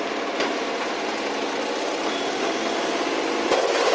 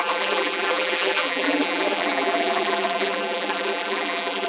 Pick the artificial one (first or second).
second